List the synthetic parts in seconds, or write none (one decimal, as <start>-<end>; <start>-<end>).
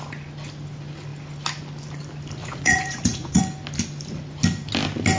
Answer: 2.4-3.4